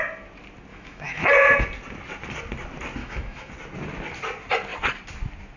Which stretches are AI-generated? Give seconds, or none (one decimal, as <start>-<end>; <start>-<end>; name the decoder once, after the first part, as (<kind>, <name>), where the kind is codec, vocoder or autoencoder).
0.7-1.3 (autoencoder, DAC-VAE); 3.0-3.5